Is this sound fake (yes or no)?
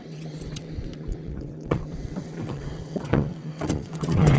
yes